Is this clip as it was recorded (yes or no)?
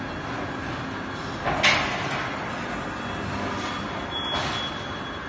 yes